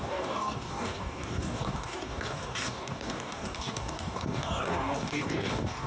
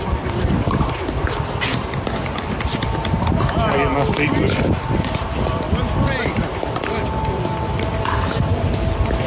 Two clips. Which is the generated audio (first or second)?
first